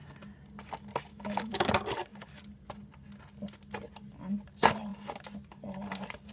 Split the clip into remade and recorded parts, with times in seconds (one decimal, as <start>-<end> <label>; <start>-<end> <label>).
0.0-1.1 recorded; 1.1-1.7 remade; 1.7-6.3 recorded